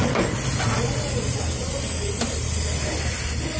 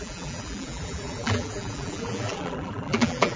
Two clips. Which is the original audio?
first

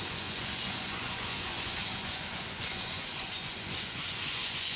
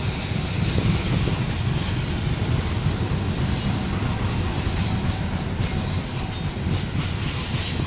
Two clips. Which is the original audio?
second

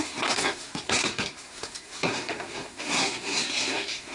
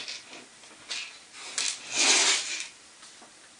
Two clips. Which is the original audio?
second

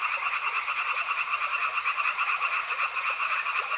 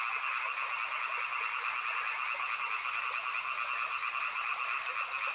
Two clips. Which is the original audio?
second